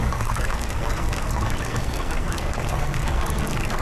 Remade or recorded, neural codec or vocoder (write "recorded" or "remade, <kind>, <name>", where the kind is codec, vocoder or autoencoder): remade, codec, SNAC